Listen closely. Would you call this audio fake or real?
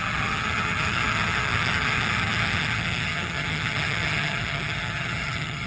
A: fake